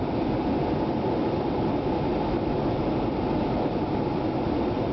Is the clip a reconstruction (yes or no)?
no